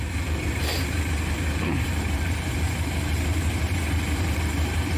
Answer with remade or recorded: remade